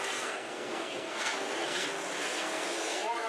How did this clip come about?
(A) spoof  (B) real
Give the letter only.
A